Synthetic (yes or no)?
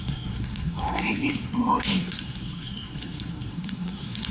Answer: yes